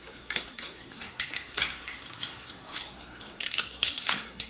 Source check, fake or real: fake